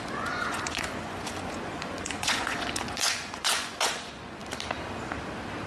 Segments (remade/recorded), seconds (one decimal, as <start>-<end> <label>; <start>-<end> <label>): 0.0-4.4 remade; 4.4-5.7 recorded